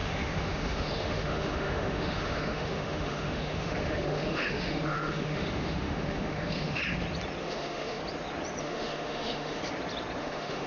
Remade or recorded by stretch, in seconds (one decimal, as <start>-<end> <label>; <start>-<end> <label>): 0.0-6.8 remade; 6.8-7.4 recorded; 7.4-8.0 remade; 8.0-8.6 recorded; 8.6-9.6 remade; 9.6-10.2 recorded; 10.2-10.7 remade